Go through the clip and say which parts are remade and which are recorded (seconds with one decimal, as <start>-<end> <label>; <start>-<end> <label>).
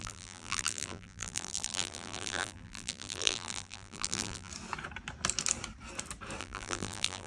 0.0-4.5 remade; 4.5-6.4 recorded; 6.4-7.3 remade